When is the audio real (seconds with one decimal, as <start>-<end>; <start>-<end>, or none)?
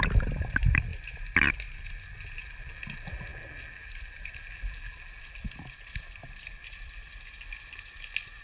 0.0-5.4; 7.2-8.4